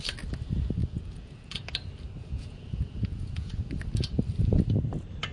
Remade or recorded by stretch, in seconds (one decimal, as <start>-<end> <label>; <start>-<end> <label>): 0.0-0.8 recorded; 0.8-1.6 remade; 1.6-2.2 recorded; 2.2-3.5 remade; 3.5-5.3 recorded